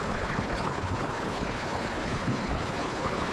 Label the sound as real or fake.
fake